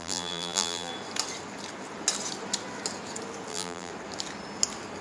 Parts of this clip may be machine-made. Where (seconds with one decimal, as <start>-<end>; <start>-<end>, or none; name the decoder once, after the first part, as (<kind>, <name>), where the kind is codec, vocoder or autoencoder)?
0.0-0.9 (vocoder, BigVGAN v2); 3.5-3.9